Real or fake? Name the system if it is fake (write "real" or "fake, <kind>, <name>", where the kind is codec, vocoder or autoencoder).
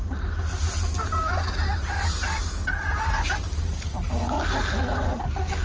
real